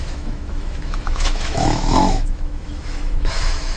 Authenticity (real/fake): fake